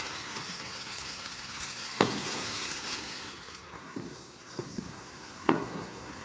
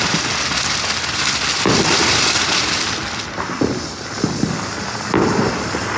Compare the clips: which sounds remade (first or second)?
first